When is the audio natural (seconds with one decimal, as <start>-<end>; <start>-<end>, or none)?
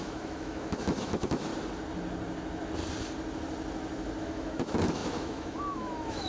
1.5-4.2